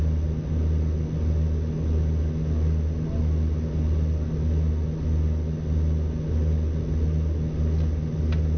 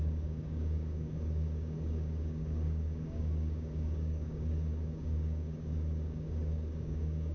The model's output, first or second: second